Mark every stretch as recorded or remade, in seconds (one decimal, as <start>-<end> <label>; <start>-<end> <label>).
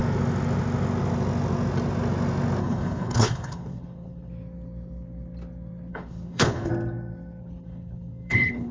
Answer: 0.0-2.6 recorded; 2.6-4.3 remade; 4.3-5.9 recorded; 5.9-6.7 remade; 6.7-7.4 recorded; 7.4-8.7 remade